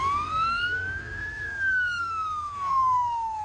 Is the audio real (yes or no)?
no